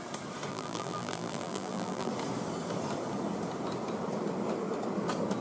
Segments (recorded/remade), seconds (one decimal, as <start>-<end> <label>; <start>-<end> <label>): 0.0-0.5 recorded; 0.5-2.1 remade; 2.1-5.4 recorded